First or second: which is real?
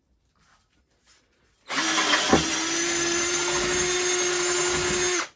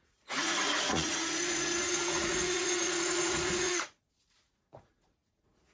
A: first